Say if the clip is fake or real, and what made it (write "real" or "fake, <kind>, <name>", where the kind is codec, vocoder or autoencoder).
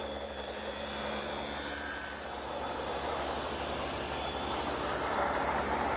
fake, vocoder, BigVGAN v2